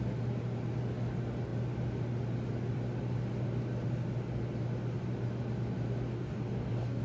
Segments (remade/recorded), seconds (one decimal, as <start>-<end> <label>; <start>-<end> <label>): 0.0-6.1 recorded; 6.1-7.0 remade